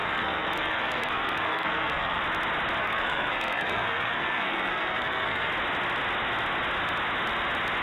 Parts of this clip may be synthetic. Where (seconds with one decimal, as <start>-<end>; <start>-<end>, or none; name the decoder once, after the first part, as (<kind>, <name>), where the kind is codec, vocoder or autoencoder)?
0.0-2.2 (codec, SNAC); 2.8-5.5